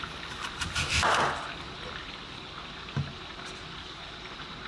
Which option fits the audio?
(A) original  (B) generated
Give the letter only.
A